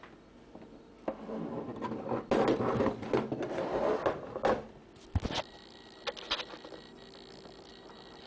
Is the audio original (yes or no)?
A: yes